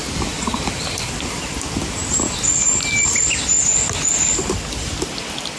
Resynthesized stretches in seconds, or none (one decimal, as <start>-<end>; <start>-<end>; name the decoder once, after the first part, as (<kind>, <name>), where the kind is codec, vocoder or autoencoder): none